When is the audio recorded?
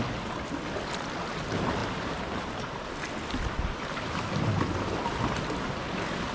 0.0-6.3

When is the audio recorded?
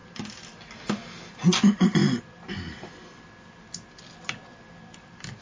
0.0-5.4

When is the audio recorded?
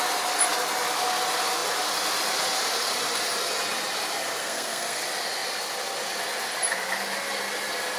0.0-4.4; 5.0-8.0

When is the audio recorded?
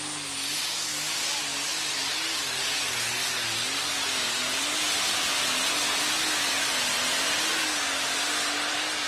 0.0-9.1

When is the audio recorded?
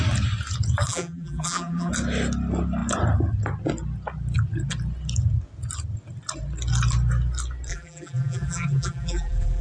0.0-0.9; 1.9-7.7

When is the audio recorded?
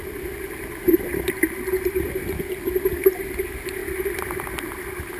0.0-1.1; 2.9-3.8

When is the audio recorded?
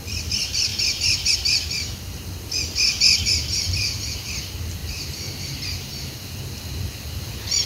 0.0-7.7